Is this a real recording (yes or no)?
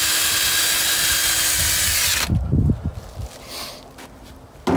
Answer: yes